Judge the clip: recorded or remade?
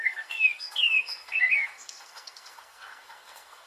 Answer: remade